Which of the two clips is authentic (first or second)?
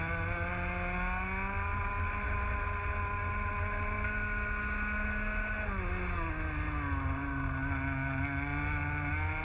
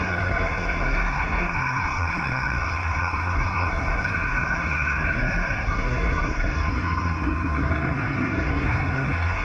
first